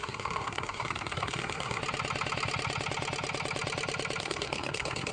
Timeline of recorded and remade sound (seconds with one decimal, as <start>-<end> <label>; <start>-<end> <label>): 0.0-1.8 remade; 1.8-4.2 recorded; 4.2-5.1 remade

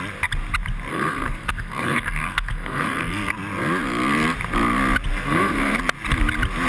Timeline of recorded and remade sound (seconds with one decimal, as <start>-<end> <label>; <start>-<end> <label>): 0.0-0.9 recorded; 0.9-3.3 remade; 3.3-5.1 recorded; 5.1-5.8 remade; 5.8-6.7 recorded

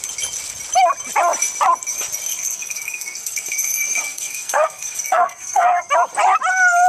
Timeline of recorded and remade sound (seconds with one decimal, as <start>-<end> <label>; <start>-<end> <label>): 0.0-2.3 recorded; 2.3-5.9 remade; 5.9-6.9 recorded

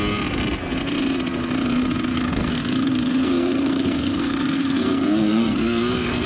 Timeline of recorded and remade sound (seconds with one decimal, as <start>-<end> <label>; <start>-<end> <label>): 0.0-2.1 recorded; 2.1-6.3 remade

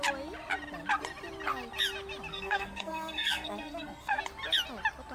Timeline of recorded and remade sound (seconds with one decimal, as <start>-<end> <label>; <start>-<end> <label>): 0.0-2.3 recorded; 2.3-4.2 remade; 4.2-5.1 recorded

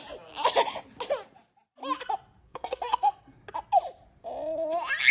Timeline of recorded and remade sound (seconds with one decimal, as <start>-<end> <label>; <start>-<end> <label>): 0.0-2.4 recorded; 2.4-3.4 remade; 3.4-5.1 recorded

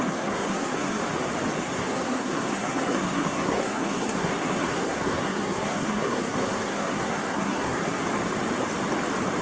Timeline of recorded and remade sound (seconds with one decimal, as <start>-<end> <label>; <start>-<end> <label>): 0.0-1.0 remade; 1.0-1.6 recorded; 1.6-8.0 remade; 8.0-9.4 recorded

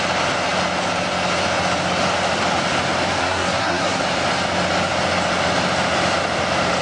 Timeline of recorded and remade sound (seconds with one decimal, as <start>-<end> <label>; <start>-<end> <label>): 0.0-3.2 recorded; 3.2-4.0 remade; 4.0-6.8 recorded